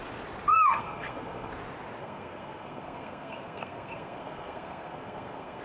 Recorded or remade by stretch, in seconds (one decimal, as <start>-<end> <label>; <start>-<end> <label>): 0.0-0.5 recorded; 0.5-1.5 remade; 1.5-2.0 recorded; 2.0-5.6 remade